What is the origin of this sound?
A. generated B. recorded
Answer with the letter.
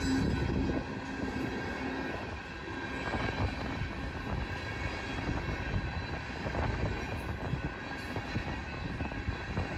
B